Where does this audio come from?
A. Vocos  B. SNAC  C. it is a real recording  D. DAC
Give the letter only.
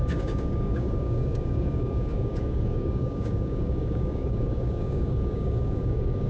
D